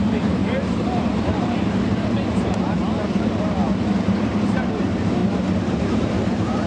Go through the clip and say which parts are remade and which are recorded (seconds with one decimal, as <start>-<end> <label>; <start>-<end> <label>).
0.0-3.6 remade; 3.6-4.4 recorded; 4.4-5.2 remade; 5.2-5.8 recorded; 5.8-6.7 remade

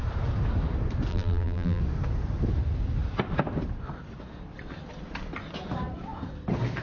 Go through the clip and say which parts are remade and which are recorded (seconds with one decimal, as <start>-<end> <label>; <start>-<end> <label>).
0.0-1.1 recorded; 1.1-1.8 remade; 1.8-6.8 recorded

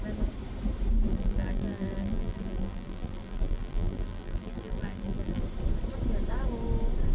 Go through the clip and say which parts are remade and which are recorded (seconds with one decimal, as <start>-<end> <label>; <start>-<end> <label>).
0.0-1.1 recorded; 1.1-5.4 remade; 5.4-7.1 recorded

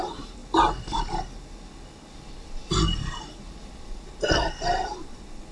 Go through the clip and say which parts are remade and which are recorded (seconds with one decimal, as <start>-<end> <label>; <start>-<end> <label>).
0.0-0.4 remade; 0.4-3.3 recorded; 3.3-5.5 remade